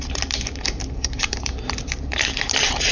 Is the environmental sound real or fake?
fake